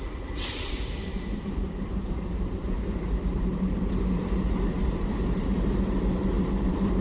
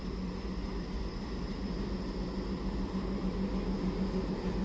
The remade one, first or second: first